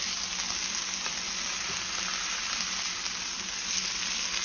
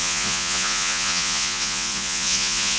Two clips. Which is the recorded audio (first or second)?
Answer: first